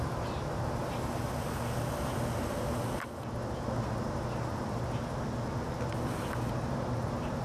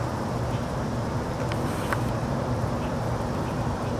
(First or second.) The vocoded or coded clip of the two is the second